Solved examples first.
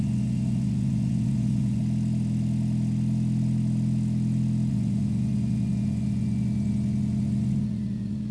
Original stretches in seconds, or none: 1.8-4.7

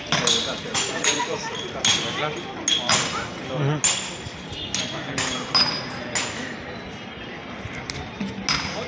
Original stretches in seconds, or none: 0.0-0.7; 1.4-8.9